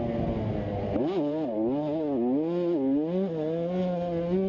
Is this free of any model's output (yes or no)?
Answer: yes